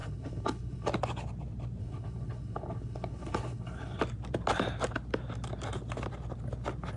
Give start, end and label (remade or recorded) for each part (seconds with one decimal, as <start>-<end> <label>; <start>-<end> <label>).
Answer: 0.0-0.9 remade; 0.9-1.8 recorded; 1.8-4.0 remade; 4.0-7.0 recorded

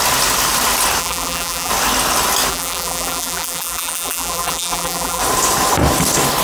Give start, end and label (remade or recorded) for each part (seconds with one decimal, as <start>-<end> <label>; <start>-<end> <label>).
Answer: 0.0-1.0 recorded; 1.0-1.7 remade; 1.7-2.5 recorded; 2.5-5.2 remade; 5.2-6.4 recorded

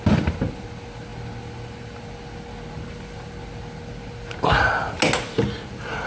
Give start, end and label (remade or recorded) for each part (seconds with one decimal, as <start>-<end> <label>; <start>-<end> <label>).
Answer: 0.0-6.1 recorded

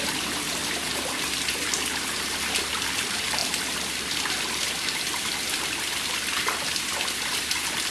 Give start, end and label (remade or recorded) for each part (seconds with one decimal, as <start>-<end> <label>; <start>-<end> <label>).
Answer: 0.0-0.6 remade; 0.6-2.9 recorded; 2.9-7.9 remade

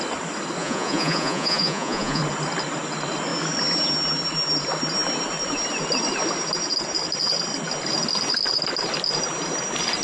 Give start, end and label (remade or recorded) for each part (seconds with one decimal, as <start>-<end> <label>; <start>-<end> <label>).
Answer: 0.0-0.6 recorded; 0.6-2.2 remade; 2.2-10.0 recorded